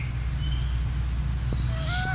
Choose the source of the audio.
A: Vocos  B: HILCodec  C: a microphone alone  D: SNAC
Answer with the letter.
C